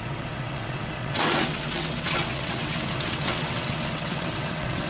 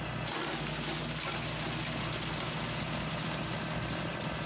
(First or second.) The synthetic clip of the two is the first